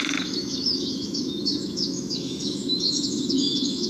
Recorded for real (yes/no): no